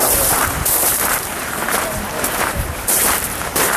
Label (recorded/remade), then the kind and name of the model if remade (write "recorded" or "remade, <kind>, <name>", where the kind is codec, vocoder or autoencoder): remade, vocoder, BigVGAN v2